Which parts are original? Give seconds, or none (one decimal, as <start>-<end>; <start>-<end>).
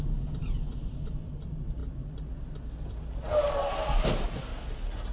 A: 0.0-5.1